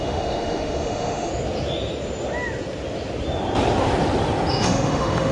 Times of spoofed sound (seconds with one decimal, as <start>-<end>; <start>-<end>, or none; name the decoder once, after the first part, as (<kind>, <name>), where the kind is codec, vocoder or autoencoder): 0.0-1.3 (autoencoder, DAC-VAE); 4.5-5.3